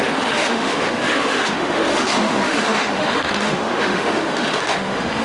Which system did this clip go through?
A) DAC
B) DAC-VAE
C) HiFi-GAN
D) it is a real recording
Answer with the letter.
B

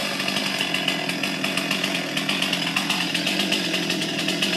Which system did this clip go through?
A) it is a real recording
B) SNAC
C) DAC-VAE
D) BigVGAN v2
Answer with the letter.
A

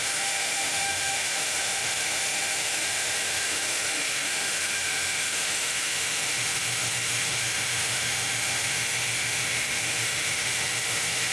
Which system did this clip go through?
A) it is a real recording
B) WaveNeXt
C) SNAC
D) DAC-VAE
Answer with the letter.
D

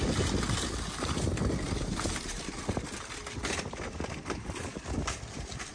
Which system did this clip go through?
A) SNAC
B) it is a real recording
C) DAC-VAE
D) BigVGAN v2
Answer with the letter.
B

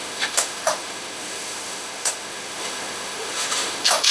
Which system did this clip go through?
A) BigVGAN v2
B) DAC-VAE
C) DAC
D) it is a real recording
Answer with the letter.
B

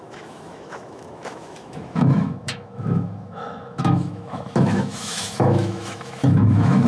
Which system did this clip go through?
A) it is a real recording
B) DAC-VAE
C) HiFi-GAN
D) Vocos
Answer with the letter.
B